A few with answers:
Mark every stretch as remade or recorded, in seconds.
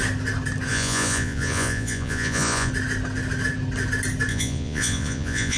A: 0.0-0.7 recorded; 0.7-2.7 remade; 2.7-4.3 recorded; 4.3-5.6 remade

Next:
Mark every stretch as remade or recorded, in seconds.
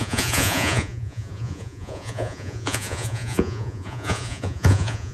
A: 0.0-5.1 remade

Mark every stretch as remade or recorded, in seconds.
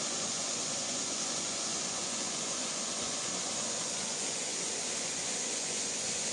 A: 0.0-6.3 remade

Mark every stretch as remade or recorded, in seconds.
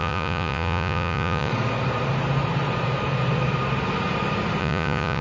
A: 0.0-1.5 remade; 1.5-4.6 recorded; 4.6-5.2 remade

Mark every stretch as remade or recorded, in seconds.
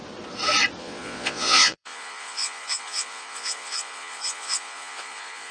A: 0.0-0.8 recorded; 0.8-5.5 remade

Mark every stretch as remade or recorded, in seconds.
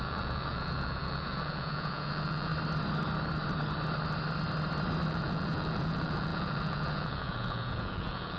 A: 0.0-2.5 remade; 2.5-5.1 recorded; 5.1-8.4 remade